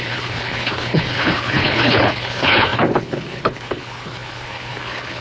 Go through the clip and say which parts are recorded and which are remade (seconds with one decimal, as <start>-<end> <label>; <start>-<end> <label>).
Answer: 0.0-5.2 remade